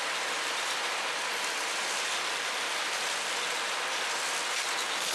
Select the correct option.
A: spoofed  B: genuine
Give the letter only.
B